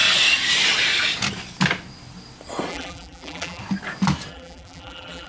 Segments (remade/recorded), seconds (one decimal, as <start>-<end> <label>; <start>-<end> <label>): 0.0-2.7 recorded; 2.7-3.6 remade; 3.6-4.3 recorded; 4.3-5.3 remade